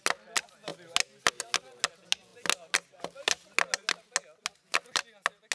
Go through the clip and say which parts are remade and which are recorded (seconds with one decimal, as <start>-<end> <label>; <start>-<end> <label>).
0.0-5.5 recorded